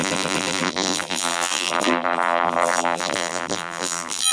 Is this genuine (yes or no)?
no